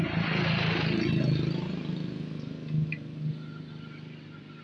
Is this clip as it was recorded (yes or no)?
yes